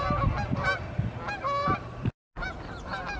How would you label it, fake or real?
real